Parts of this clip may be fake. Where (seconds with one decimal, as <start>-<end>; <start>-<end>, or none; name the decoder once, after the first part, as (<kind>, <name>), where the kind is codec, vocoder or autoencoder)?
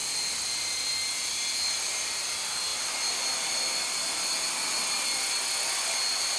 none